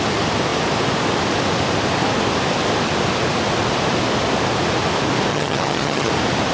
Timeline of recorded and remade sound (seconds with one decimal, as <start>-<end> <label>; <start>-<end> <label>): 0.0-5.3 recorded; 5.3-6.1 remade; 6.1-6.5 recorded

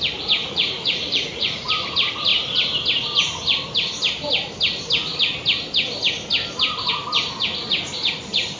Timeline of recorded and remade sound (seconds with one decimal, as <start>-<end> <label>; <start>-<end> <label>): 0.0-0.4 recorded; 0.4-1.7 remade; 1.7-8.6 recorded

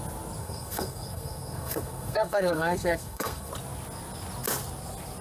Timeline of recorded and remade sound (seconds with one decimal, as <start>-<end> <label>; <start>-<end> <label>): 0.0-0.4 recorded; 0.4-3.5 remade; 3.5-5.2 recorded

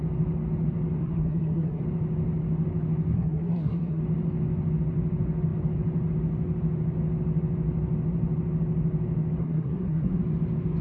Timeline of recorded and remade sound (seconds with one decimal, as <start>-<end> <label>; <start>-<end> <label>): 0.0-1.0 recorded; 1.0-1.8 remade; 1.8-3.1 recorded; 3.1-4.0 remade; 4.0-9.4 recorded; 9.4-10.2 remade; 10.2-10.8 recorded